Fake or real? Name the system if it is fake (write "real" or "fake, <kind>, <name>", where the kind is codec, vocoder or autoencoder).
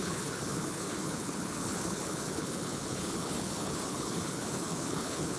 fake, codec, HILCodec